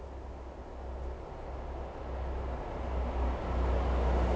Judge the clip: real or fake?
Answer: real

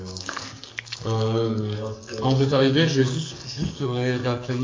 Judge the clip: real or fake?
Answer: fake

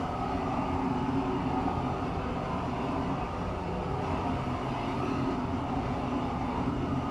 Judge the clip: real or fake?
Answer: real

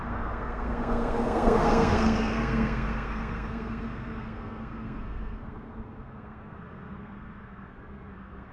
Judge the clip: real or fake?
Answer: fake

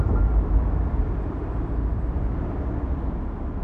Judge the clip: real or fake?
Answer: real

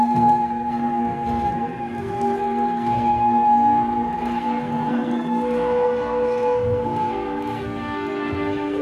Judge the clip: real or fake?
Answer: fake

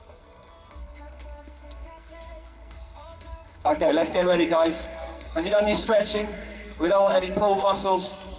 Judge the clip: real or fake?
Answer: fake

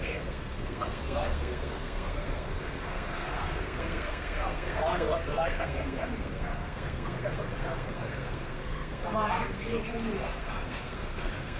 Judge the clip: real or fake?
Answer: fake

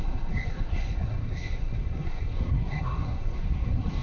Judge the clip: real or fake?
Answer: fake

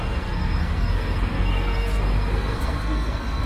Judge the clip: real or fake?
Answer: fake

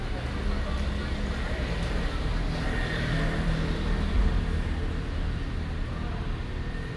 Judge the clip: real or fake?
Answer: real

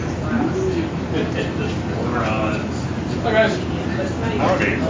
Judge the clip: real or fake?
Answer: real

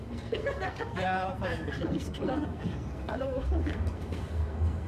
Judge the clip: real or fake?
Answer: fake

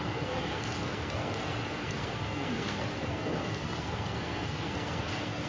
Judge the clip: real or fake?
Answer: fake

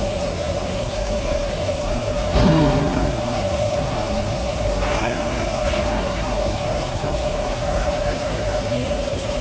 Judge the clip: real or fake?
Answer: fake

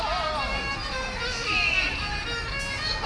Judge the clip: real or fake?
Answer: real